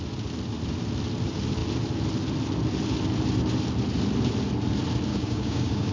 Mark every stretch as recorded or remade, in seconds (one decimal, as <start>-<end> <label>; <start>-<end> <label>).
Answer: 0.0-5.1 recorded; 5.1-5.9 remade